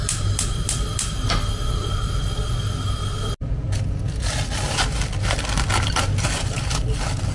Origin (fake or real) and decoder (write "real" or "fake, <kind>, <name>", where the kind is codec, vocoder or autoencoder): real